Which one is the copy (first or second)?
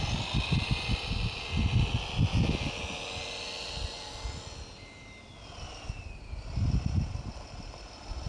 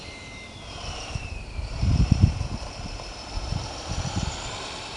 second